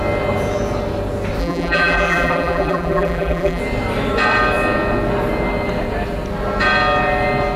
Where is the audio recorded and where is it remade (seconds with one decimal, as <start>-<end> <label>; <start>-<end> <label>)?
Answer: 0.0-1.4 recorded; 1.4-3.6 remade; 3.6-7.6 recorded

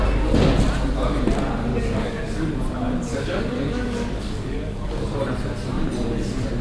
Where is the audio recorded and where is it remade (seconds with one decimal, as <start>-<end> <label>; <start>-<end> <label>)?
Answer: 0.0-1.7 recorded; 1.7-2.5 remade; 2.5-3.1 recorded; 3.1-5.2 remade; 5.2-6.6 recorded

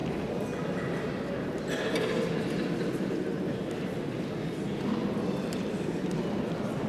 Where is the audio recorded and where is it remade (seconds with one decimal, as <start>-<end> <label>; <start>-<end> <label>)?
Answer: 0.0-4.7 recorded; 4.7-6.4 remade; 6.4-6.9 recorded

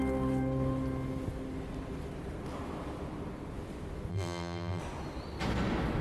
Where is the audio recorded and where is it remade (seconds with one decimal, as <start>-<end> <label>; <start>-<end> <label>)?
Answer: 0.0-4.1 recorded; 4.1-4.8 remade; 4.8-6.0 recorded